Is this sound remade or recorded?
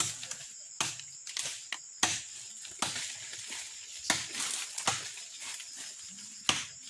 recorded